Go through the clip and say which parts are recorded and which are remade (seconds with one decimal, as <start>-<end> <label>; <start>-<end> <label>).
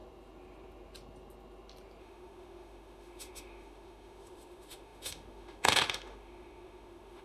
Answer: 0.0-2.0 recorded; 2.0-7.2 remade